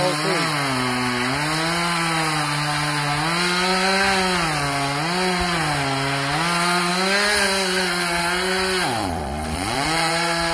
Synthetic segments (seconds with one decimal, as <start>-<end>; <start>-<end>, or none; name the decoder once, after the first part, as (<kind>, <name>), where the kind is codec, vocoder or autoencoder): 9.0-10.1 (vocoder, Vocos)